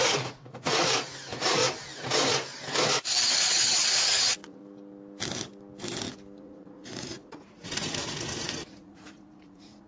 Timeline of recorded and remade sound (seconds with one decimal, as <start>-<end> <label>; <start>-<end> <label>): 0.0-1.6 remade; 1.6-3.5 recorded; 3.5-4.6 remade; 4.6-6.4 recorded; 6.4-9.9 remade